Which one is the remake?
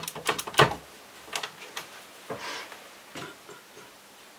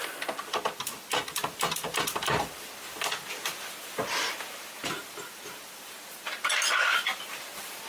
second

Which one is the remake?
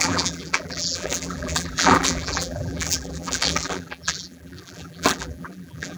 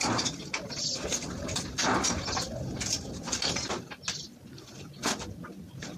first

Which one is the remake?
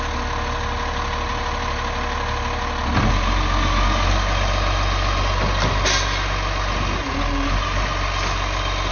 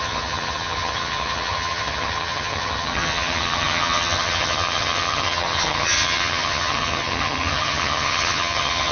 second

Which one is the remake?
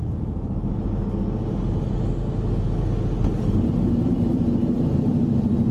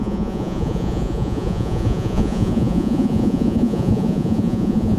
second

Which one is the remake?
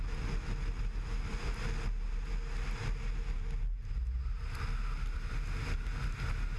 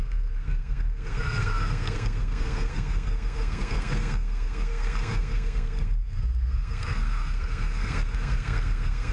second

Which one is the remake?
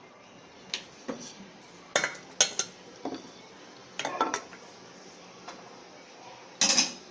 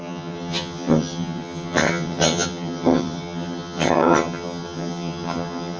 second